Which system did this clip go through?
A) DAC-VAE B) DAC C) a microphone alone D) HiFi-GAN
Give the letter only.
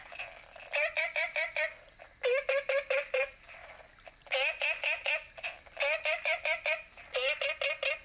C